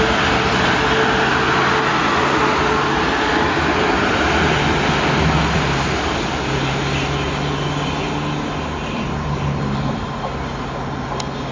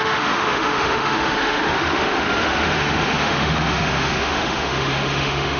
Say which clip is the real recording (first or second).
first